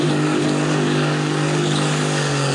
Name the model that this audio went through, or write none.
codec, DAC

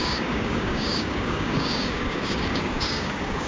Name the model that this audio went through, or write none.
codec, DAC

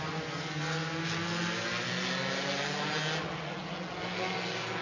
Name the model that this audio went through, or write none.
none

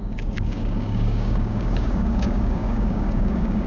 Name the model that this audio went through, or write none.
codec, DAC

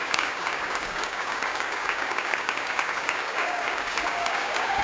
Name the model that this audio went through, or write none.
codec, DAC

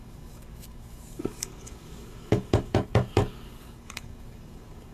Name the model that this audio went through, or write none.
codec, DAC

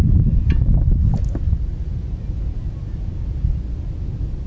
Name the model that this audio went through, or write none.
none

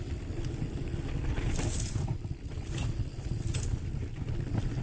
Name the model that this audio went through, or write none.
none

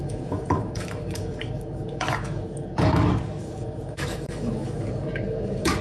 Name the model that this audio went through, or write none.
codec, DAC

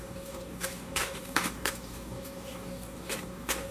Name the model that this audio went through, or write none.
codec, DAC